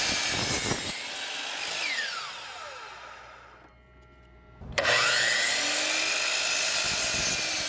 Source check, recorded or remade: recorded